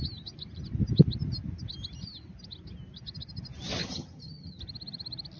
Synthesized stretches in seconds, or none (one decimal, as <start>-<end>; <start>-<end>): 3.8-4.6